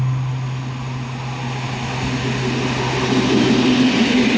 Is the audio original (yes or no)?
yes